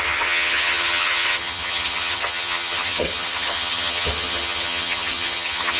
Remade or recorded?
remade